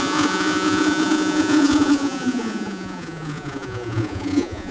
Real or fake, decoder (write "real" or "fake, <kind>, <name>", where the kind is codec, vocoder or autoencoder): fake, vocoder, Vocos